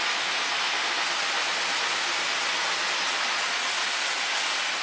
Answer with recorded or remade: recorded